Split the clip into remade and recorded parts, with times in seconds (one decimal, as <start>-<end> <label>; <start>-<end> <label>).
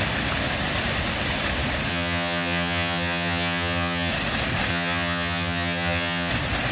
0.0-1.9 recorded; 1.9-4.1 remade; 4.1-4.7 recorded; 4.7-6.3 remade; 6.3-6.7 recorded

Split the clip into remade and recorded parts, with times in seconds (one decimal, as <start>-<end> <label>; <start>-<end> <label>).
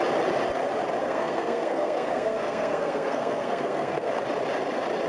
0.0-1.0 recorded; 1.0-4.1 remade; 4.1-5.1 recorded